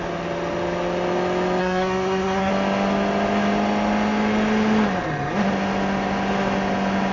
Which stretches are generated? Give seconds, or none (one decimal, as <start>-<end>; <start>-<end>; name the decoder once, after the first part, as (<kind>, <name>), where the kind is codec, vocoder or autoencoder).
1.6-2.5 (codec, SNAC)